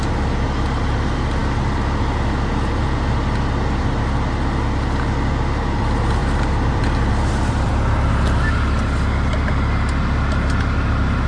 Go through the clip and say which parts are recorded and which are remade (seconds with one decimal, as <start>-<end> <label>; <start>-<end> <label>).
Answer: 0.0-6.2 recorded; 6.2-7.7 remade; 7.7-11.3 recorded